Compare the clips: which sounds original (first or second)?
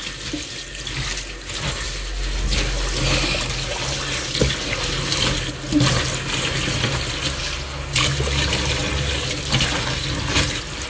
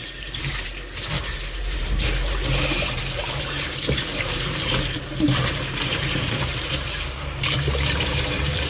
first